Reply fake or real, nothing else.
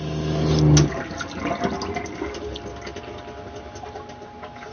real